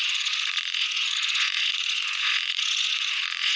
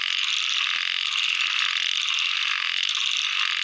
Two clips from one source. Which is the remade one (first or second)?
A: first